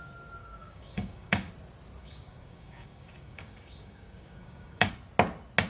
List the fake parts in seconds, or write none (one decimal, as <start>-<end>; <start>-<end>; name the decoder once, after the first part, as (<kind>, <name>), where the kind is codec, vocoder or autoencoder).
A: 0.4-1.5 (codec, DAC); 2.0-4.9